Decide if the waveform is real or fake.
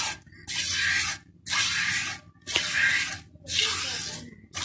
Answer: real